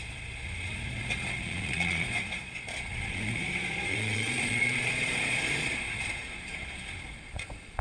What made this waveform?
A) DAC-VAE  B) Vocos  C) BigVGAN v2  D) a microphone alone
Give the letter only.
B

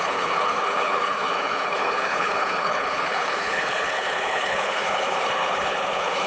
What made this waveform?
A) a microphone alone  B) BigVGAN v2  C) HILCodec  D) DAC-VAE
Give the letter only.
C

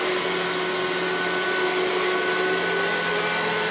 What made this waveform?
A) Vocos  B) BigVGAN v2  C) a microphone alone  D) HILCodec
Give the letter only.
C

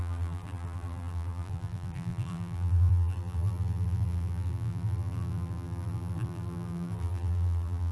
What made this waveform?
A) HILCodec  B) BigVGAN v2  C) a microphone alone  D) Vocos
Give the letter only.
B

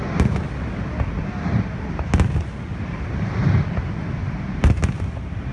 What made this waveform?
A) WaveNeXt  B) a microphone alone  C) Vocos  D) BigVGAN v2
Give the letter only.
B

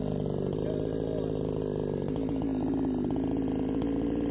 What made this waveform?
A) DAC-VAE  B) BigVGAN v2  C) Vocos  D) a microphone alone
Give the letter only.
D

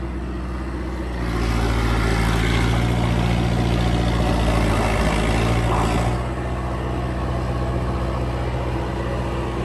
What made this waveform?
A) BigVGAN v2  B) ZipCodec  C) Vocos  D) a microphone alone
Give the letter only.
D